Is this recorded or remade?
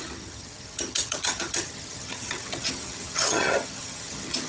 remade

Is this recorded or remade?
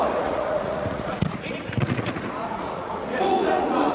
remade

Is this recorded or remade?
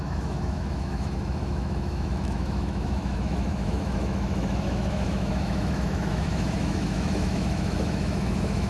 remade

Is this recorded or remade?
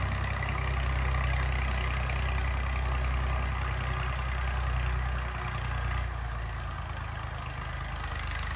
recorded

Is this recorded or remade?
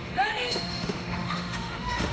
remade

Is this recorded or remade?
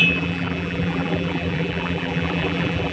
remade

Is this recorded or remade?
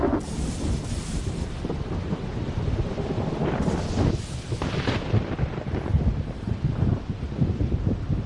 remade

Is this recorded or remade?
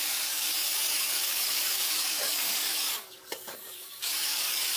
remade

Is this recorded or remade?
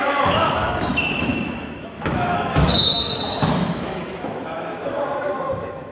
remade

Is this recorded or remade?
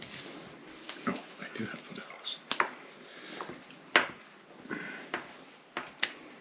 recorded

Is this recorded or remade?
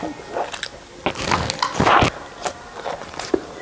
recorded